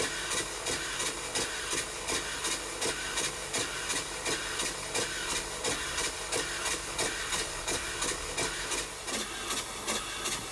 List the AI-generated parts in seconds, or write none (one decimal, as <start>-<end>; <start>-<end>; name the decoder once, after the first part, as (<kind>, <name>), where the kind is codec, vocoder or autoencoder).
7.3-7.9 (codec, DAC)